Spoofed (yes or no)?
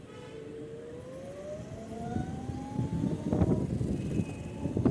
no